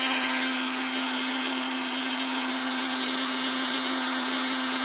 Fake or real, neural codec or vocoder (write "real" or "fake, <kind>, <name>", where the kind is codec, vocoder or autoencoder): fake, vocoder, HiFi-GAN